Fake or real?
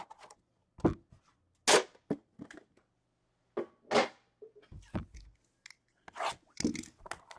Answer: real